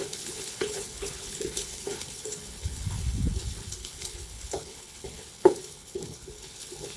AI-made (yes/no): yes